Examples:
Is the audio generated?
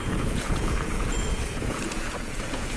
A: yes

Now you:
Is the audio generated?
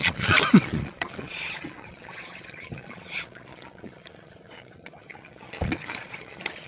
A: yes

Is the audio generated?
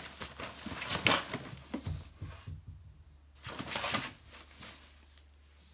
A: no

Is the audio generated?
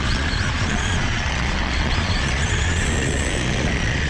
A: yes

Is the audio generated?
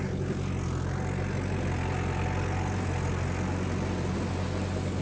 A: no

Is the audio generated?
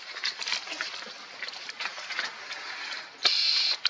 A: no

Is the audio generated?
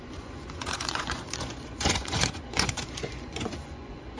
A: yes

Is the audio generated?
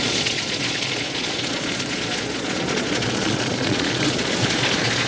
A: yes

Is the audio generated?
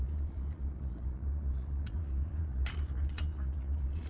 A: yes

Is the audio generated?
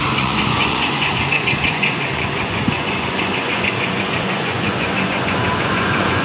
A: yes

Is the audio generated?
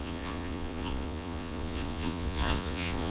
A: yes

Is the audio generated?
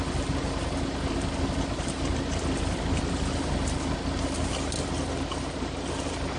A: no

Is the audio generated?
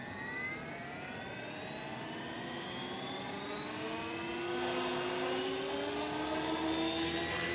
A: no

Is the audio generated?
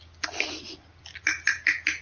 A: no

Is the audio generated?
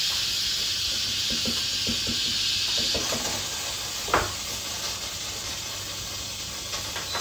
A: no